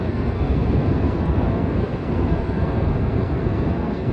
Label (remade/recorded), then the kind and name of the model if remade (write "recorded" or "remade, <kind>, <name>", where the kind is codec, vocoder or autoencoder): remade, codec, SNAC